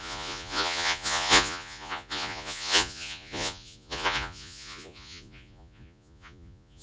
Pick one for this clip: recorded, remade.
remade